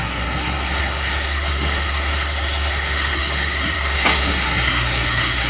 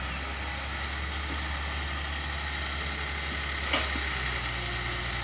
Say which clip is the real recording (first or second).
second